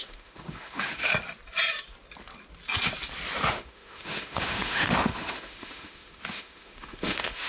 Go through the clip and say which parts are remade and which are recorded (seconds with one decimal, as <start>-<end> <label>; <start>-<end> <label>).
0.0-1.1 remade; 1.1-3.5 recorded; 3.5-7.5 remade